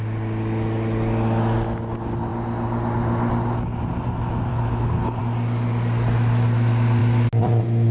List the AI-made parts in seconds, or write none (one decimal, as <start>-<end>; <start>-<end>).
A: 4.5-5.2